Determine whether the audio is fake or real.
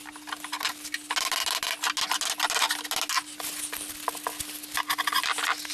real